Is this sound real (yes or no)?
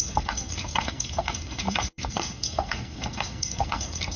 no